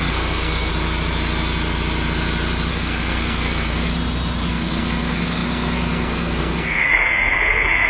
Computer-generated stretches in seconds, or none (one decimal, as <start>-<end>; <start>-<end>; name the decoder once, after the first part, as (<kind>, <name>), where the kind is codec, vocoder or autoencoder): 0.0-0.7 (codec, SNAC); 2.7-3.9; 4.5-7.9